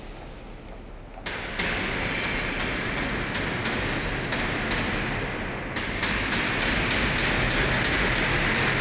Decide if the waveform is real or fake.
real